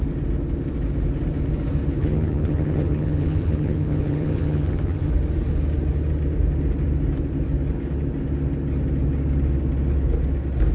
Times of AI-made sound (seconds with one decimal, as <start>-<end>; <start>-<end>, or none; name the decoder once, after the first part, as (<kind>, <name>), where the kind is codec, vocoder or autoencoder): 2.0-5.1 (vocoder, HiFi-GAN)